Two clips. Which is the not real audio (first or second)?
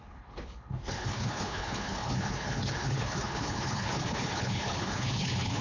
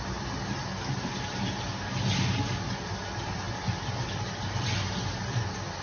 first